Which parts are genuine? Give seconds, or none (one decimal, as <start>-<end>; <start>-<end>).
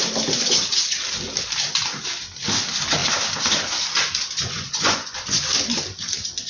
0.0-4.4; 5.4-6.5